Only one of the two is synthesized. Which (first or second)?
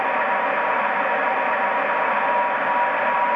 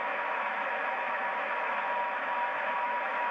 second